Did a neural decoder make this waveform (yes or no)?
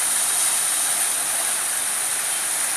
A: no